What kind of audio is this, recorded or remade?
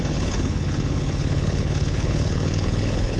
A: remade